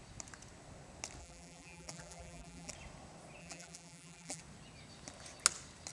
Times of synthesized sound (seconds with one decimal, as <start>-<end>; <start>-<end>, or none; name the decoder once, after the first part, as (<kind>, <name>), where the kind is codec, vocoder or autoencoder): 1.2-2.7 (vocoder, BigVGAN v2); 3.4-4.4